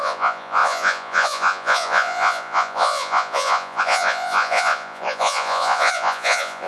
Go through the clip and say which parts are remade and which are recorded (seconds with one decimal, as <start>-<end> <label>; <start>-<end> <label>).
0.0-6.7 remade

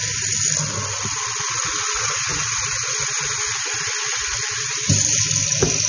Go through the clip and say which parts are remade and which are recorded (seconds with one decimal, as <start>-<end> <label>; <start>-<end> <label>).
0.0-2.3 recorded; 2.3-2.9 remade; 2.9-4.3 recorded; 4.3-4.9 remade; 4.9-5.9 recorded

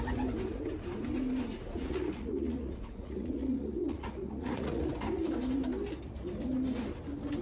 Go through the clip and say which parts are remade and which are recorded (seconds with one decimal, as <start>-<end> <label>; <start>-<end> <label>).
0.0-1.7 recorded; 1.7-4.9 remade; 4.9-7.4 recorded

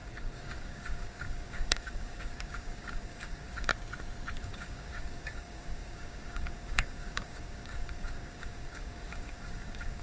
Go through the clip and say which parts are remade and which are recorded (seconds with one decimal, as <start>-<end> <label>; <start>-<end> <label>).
0.0-3.7 remade; 3.7-4.4 recorded; 4.4-10.0 remade

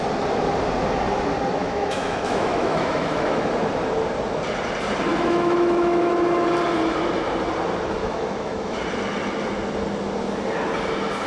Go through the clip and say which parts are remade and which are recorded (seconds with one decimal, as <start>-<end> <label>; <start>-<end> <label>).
0.0-1.6 recorded; 1.6-3.5 remade; 3.5-5.1 recorded; 5.1-6.1 remade; 6.1-8.0 recorded; 8.0-8.8 remade; 8.8-11.3 recorded

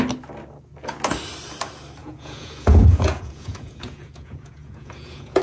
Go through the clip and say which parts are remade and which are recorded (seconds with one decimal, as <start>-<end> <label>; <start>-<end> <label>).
0.0-2.0 recorded; 2.0-5.4 remade